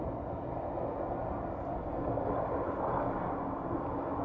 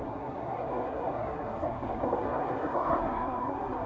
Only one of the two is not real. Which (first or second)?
second